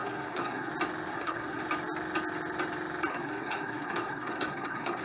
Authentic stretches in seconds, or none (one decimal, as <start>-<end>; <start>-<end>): 0.7-1.1; 1.6-3.1

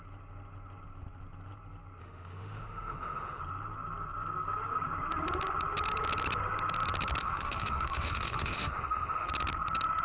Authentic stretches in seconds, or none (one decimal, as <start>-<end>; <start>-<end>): 0.0-2.0; 3.4-7.2; 9.3-10.0

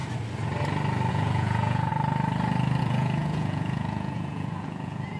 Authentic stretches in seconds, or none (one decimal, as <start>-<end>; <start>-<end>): 0.0-1.1; 1.9-2.8

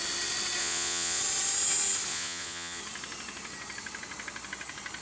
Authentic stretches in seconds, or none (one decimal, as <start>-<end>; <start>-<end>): 0.0-0.6; 1.2-2.1; 2.8-5.0

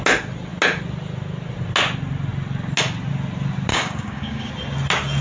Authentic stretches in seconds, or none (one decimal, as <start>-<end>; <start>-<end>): 0.0-3.7; 4.5-5.2

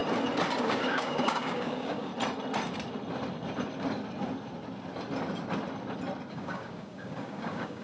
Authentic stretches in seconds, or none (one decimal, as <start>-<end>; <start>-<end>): 0.0-0.6; 2.1-6.3

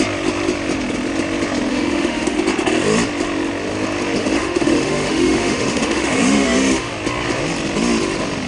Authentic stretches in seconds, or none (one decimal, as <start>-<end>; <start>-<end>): 0.0-1.7; 2.4-4.2; 6.9-8.5

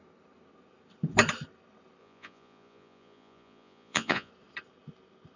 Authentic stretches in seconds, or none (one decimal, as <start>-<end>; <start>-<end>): 0.0-2.0; 4.3-5.4